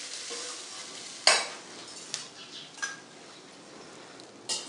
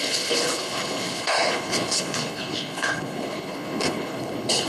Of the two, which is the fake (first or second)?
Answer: second